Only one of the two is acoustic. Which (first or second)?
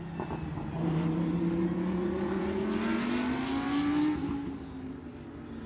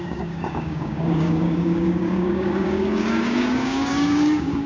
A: first